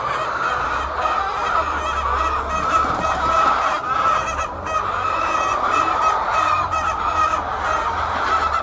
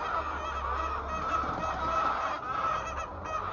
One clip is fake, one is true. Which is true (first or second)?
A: second